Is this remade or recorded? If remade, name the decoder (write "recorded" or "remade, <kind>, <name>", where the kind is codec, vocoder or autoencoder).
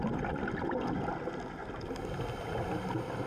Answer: recorded